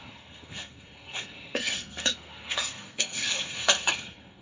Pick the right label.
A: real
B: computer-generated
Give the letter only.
B